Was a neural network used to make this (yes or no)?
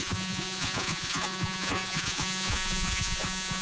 yes